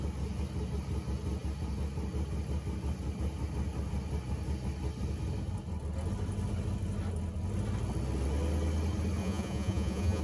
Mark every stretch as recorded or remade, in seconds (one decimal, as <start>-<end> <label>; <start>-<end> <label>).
0.0-9.2 recorded; 9.2-10.2 remade